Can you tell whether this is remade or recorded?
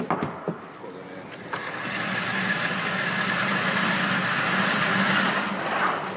recorded